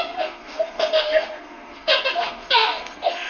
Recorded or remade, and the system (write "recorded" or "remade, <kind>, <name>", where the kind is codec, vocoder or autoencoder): remade, codec, SNAC